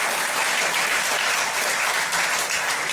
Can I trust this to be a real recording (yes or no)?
no